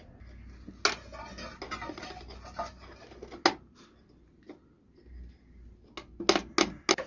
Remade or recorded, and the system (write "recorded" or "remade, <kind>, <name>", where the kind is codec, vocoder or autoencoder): recorded